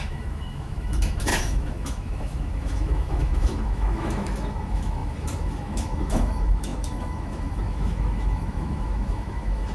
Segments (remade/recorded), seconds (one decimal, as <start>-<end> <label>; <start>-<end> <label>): 0.0-9.7 remade